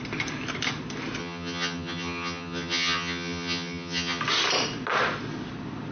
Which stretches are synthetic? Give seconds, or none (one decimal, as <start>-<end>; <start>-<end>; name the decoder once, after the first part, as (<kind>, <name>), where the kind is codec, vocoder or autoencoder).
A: 1.2-4.2 (vocoder, HiFi-GAN)